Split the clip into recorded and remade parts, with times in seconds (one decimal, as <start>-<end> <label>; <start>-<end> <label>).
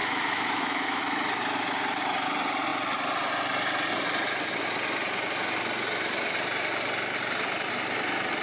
0.0-1.0 remade; 1.0-8.4 recorded